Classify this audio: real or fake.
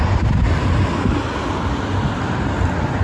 real